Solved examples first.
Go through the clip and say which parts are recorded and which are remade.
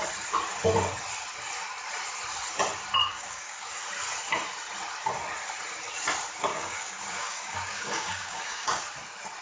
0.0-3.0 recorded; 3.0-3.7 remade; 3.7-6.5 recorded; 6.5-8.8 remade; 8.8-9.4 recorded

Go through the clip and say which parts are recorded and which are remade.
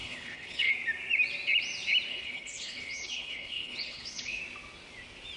0.0-0.7 remade; 0.7-2.1 recorded; 2.1-4.4 remade; 4.4-5.4 recorded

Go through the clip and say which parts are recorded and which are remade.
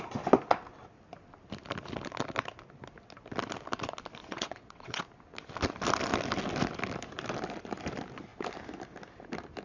0.0-4.2 recorded; 4.2-5.0 remade; 5.0-9.6 recorded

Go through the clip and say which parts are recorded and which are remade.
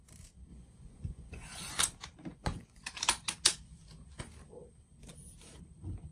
0.0-0.5 recorded; 0.5-1.8 remade; 1.8-2.3 recorded; 2.3-2.9 remade; 2.9-6.1 recorded